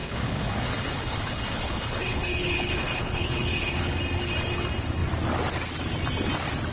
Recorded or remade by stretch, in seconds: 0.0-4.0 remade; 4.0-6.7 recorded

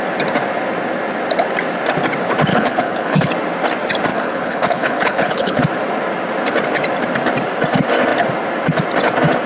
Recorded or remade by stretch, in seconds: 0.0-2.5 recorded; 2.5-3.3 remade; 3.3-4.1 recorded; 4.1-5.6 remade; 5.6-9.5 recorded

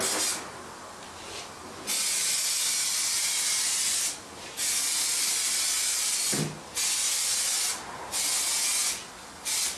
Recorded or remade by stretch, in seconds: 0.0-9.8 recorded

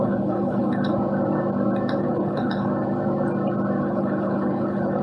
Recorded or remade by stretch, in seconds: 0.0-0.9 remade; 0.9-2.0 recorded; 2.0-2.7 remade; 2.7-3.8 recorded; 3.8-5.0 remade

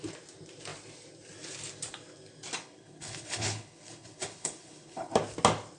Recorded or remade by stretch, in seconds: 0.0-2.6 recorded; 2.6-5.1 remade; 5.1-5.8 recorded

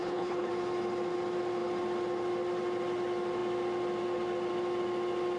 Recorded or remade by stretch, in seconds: 0.0-0.5 remade; 0.5-5.4 recorded

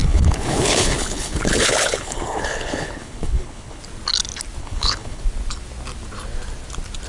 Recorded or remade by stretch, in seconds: 0.0-3.8 remade; 3.8-4.6 recorded; 4.6-5.2 remade; 5.2-7.1 recorded

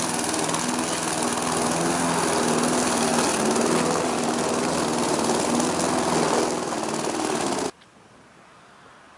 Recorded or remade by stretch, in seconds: 0.0-9.2 recorded